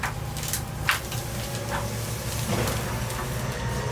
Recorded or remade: recorded